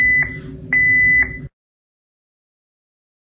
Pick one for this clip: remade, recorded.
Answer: recorded